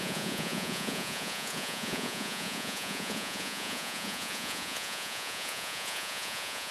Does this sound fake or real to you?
fake